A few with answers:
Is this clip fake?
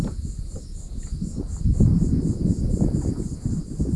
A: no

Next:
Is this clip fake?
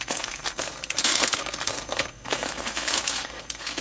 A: yes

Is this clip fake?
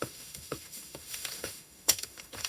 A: yes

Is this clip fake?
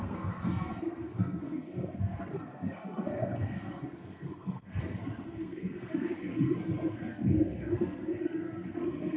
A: yes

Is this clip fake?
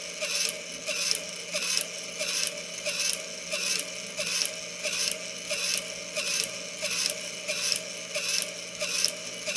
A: no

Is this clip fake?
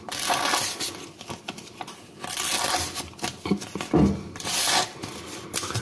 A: no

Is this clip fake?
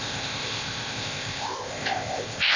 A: yes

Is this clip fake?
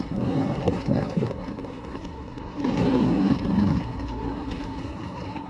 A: yes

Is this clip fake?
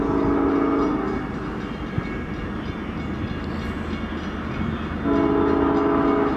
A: no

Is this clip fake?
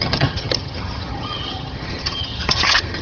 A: yes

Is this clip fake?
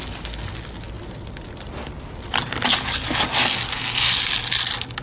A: no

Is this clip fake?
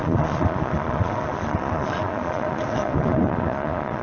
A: yes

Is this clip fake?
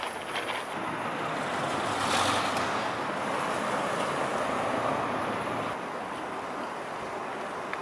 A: no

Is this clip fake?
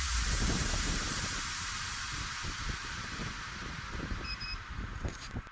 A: yes